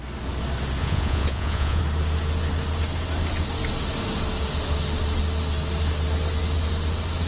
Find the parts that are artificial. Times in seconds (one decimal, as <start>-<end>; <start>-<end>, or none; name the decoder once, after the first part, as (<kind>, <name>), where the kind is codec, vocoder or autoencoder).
0.8-1.8 (vocoder, Vocos)

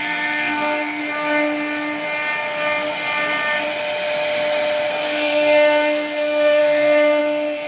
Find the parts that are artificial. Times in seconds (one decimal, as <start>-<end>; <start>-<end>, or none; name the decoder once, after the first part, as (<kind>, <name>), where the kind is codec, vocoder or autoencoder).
0.0-1.0 (codec, SNAC); 4.9-7.7

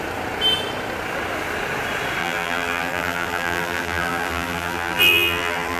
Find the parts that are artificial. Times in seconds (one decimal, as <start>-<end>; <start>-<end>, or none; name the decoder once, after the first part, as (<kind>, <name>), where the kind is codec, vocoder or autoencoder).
2.2-5.8 (vocoder, BigVGAN v2)

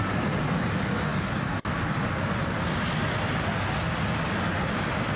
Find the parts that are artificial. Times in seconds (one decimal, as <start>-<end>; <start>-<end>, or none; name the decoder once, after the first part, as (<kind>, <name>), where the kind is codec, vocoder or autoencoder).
none

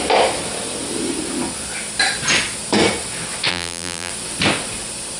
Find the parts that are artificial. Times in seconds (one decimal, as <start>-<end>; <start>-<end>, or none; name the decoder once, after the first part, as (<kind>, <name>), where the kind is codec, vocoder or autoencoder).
3.5-4.1 (vocoder, BigVGAN v2)

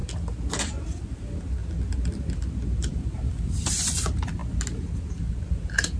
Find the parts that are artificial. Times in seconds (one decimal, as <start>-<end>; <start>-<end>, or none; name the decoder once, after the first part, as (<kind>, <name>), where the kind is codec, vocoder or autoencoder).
2.8-3.7 (vocoder, BigVGAN v2)

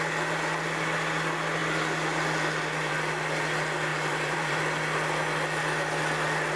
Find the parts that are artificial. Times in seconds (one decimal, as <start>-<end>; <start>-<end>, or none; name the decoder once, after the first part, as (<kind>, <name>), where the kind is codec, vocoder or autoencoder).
3.9-4.6 (vocoder, BigVGAN v2)